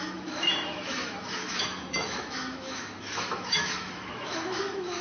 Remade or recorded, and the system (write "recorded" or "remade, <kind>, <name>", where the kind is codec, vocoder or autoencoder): remade, autoencoder, DAC-VAE